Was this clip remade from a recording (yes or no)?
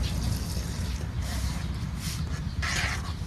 no